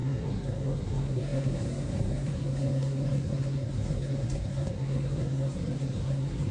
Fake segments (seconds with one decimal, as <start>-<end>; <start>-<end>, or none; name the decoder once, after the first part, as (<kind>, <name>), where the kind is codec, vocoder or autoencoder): 0.0-6.5 (codec, SNAC)